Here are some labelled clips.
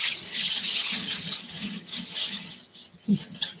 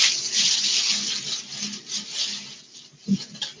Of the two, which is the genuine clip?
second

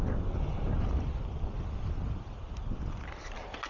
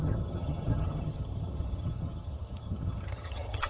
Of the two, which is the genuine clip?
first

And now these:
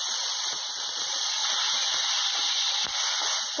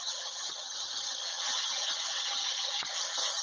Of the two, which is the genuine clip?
first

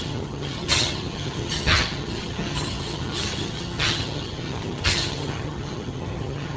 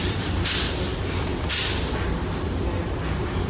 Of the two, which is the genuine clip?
second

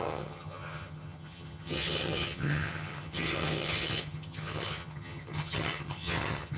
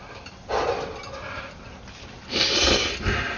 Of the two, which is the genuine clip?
second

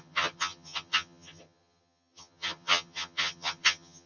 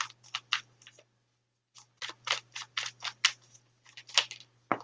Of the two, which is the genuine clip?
second